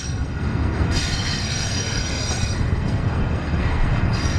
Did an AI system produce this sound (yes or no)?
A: yes